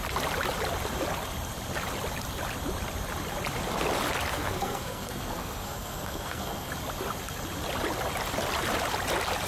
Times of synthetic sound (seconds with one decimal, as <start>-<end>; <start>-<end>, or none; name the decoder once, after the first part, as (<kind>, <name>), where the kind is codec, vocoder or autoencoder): 4.3-6.7 (codec, SNAC)